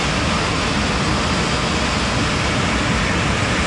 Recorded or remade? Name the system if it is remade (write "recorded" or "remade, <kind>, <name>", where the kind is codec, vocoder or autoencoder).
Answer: recorded